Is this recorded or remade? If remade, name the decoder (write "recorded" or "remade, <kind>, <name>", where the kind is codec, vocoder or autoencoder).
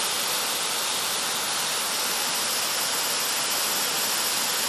recorded